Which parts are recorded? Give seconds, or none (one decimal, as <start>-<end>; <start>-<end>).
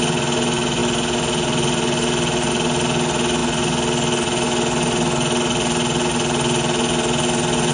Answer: 0.0-7.7